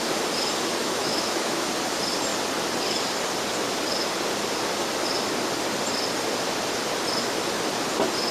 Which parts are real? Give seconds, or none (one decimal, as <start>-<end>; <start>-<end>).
0.0-0.8; 1.7-8.3